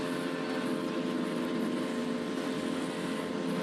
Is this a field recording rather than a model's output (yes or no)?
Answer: yes